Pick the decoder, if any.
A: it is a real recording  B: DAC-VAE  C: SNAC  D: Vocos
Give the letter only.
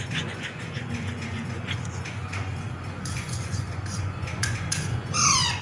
D